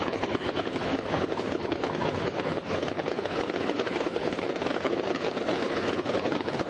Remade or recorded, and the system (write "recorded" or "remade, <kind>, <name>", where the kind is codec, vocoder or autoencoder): remade, codec, HILCodec